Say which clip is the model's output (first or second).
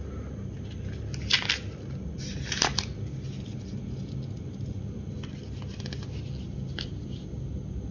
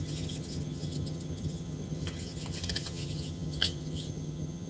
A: second